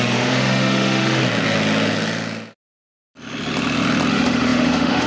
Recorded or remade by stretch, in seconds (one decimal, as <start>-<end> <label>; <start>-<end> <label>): 0.0-1.2 remade; 1.2-4.1 recorded; 4.1-5.1 remade